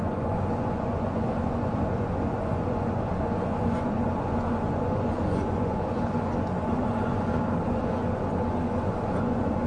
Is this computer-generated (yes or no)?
yes